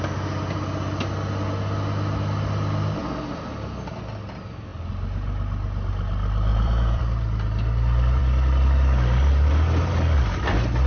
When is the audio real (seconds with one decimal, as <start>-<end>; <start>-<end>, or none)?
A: 0.0-6.5; 7.0-10.9